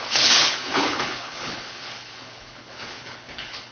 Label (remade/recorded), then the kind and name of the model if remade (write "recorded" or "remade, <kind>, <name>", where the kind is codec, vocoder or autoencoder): remade, codec, HILCodec